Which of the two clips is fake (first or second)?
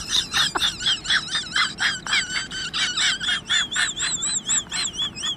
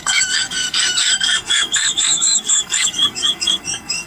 second